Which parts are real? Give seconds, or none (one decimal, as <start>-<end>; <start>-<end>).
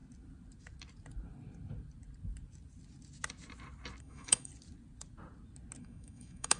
0.0-4.0; 4.5-5.8